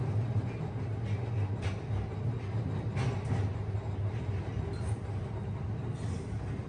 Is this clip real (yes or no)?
yes